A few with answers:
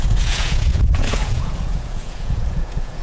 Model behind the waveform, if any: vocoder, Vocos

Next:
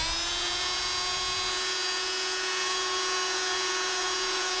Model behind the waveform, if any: vocoder, Vocos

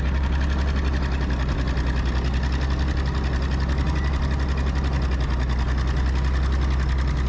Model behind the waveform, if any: none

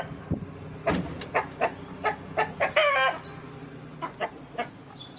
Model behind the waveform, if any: none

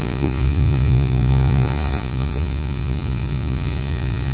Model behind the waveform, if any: vocoder, Vocos